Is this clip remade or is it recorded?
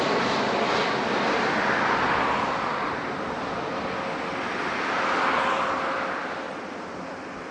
recorded